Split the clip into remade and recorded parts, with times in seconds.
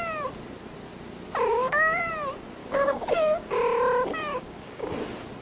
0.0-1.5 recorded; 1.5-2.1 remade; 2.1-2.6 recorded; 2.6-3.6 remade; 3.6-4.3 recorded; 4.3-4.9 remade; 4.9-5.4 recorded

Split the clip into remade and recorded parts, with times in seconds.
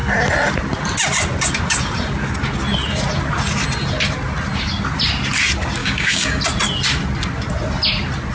0.0-5.8 recorded; 5.8-6.4 remade; 6.4-8.3 recorded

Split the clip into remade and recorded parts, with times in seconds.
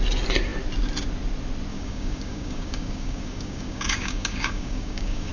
0.0-1.7 recorded; 1.7-5.3 remade